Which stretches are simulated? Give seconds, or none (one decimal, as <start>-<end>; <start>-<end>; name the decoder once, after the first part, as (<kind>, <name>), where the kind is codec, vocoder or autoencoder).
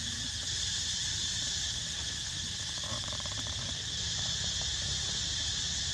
0.7-4.2 (vocoder, BigVGAN v2)